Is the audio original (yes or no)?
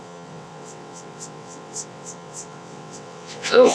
no